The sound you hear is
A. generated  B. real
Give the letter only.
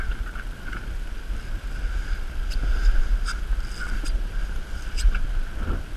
B